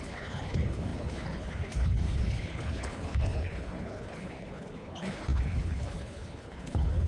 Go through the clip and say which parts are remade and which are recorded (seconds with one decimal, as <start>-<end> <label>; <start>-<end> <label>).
0.0-7.1 remade